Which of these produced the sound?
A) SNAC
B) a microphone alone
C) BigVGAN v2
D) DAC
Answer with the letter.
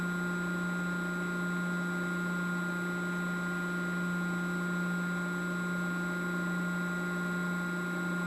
B